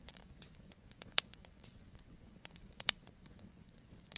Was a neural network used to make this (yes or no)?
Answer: yes